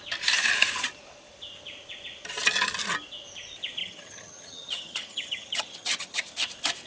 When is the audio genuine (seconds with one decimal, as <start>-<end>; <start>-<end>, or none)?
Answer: 0.0-3.8; 6.3-6.9